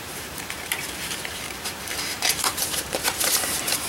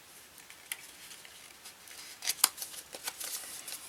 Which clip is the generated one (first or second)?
first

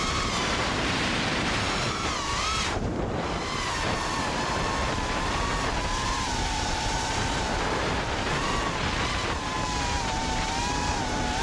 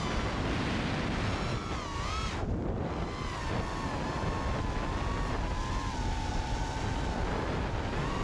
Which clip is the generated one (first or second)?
first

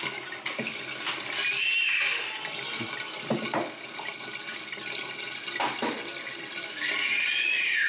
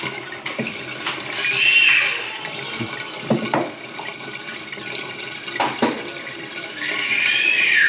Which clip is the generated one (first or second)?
second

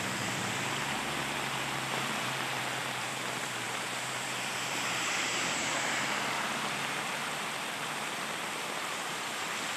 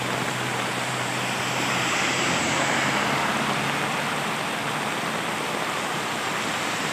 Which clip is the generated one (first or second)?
first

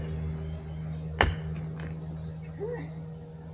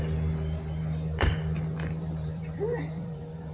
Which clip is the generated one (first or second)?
second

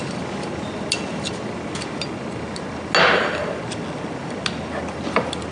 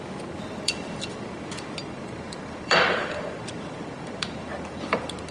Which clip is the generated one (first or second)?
second